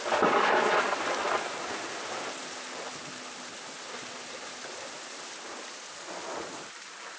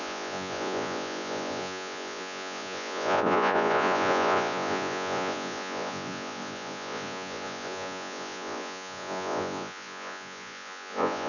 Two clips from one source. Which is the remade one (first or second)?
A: second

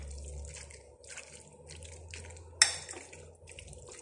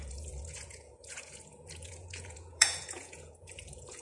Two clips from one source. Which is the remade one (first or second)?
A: second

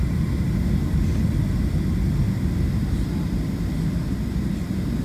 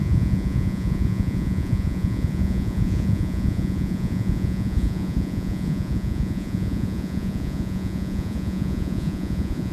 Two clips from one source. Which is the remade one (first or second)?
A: second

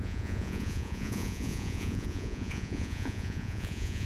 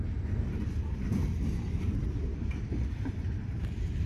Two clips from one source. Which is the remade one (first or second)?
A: first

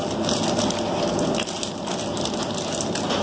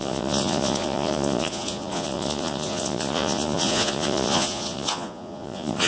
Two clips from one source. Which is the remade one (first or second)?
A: second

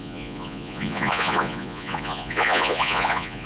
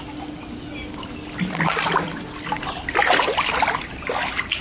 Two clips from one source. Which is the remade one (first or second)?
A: first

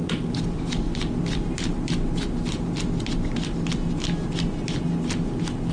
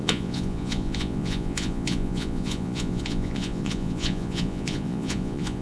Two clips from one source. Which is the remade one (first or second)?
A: second